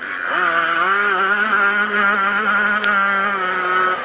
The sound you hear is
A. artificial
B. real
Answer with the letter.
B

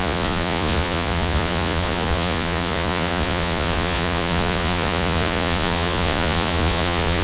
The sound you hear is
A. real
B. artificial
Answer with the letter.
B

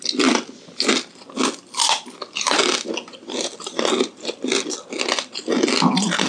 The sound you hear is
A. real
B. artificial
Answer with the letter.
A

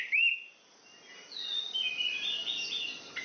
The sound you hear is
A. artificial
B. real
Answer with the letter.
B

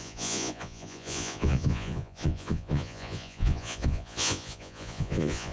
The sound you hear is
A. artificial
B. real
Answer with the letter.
A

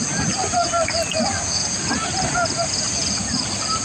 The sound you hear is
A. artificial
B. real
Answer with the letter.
B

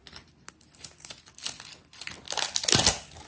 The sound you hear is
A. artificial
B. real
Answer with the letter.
B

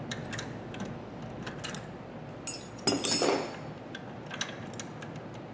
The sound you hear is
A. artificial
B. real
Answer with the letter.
B